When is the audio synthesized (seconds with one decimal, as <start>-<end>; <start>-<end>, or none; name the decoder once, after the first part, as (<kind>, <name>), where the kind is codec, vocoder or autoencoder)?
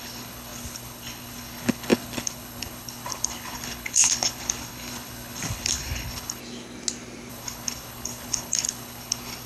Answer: 0.0-6.4 (codec, HILCodec); 7.3-9.5